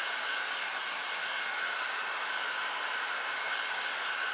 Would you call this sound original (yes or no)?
yes